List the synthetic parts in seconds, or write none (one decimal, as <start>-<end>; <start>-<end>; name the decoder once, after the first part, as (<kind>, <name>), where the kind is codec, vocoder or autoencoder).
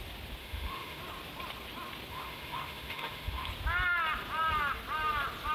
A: 0.4-1.0 (autoencoder, DAC-VAE); 2.1-3.5